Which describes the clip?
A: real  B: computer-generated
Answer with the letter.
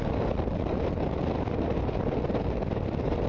A